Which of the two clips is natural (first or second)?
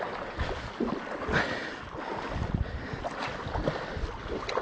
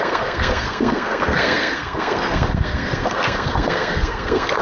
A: first